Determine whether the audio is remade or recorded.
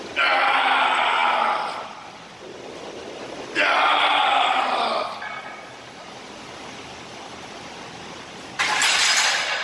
recorded